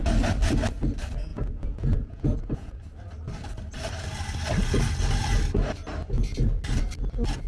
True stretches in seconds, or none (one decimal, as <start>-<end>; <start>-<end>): 0.0-1.3; 2.8-7.5